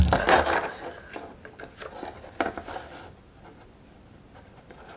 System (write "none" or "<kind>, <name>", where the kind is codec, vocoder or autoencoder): none